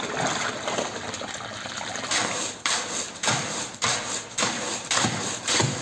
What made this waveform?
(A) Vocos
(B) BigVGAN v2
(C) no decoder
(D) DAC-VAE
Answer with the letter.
B